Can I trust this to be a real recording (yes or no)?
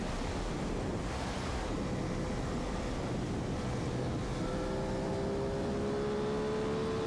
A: yes